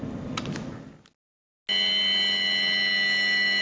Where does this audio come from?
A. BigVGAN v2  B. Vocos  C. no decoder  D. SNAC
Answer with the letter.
C